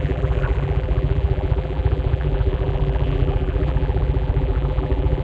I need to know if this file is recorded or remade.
remade